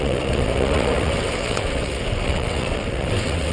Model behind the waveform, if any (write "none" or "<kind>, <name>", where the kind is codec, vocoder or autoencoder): vocoder, WaveNeXt